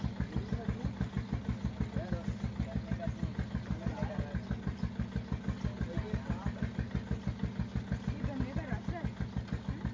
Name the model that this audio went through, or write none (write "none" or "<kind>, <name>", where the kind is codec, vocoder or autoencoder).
none